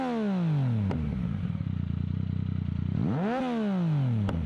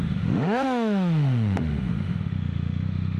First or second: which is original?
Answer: first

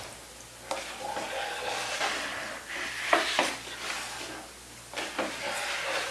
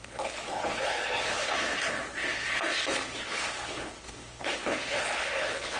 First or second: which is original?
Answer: first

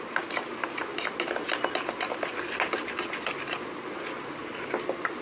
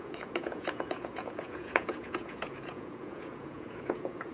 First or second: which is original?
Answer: first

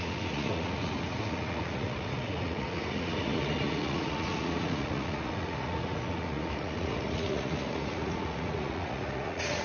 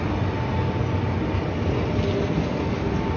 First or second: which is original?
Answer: second